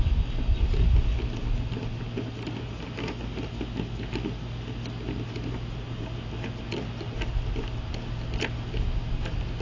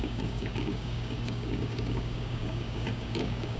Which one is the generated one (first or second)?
second